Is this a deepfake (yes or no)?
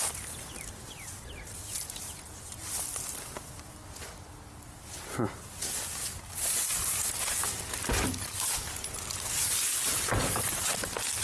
no